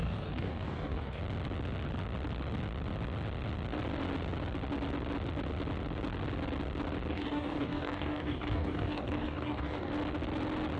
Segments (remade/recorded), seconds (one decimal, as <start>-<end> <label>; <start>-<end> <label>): 0.0-1.2 remade; 1.2-7.1 recorded; 7.1-9.9 remade; 9.9-10.8 recorded